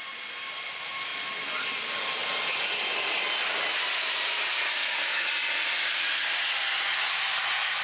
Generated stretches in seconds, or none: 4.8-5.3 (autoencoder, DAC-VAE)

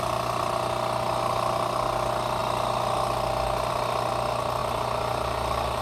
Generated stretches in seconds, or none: none

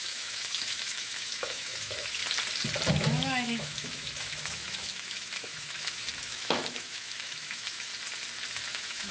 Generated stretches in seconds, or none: 0.0-2.2 (autoencoder, DAC-VAE); 2.9-7.9; 8.7-9.1

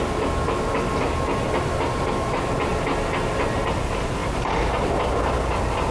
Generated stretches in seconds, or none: 4.2-5.4 (vocoder, BigVGAN v2)